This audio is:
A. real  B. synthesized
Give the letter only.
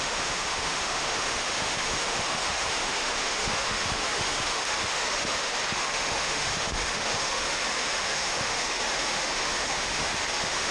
B